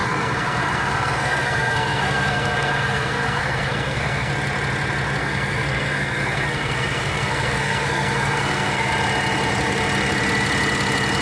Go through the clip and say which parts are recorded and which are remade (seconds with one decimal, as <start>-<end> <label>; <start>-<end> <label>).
0.0-4.3 remade; 4.3-5.2 recorded; 5.2-8.9 remade; 8.9-11.2 recorded